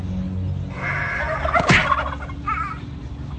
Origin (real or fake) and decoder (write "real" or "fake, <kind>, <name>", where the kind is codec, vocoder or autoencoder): real